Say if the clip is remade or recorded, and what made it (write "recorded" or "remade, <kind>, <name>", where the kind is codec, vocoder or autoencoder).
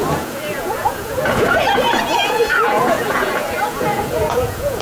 remade, vocoder, Vocos